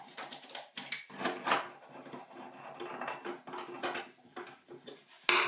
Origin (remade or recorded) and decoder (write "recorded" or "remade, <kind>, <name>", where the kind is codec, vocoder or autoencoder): recorded